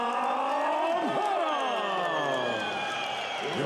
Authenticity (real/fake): real